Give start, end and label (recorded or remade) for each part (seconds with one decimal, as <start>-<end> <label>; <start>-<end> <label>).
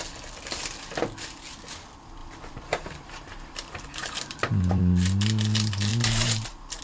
0.0-2.2 recorded; 2.2-4.8 remade; 4.8-5.9 recorded; 5.9-6.8 remade